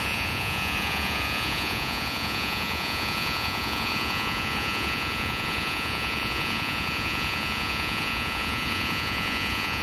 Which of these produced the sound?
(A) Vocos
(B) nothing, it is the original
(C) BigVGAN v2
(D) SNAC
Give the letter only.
A